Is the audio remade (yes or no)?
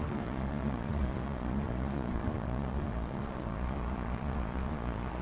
yes